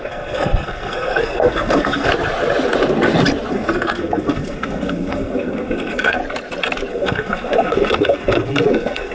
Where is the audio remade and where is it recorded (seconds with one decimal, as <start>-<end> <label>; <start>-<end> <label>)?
0.0-2.1 remade; 2.1-3.5 recorded; 3.5-6.2 remade; 6.2-6.9 recorded; 6.9-9.1 remade